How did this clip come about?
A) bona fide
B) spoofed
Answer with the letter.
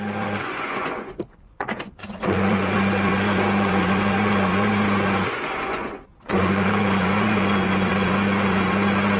B